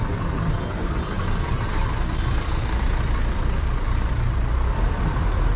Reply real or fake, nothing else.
fake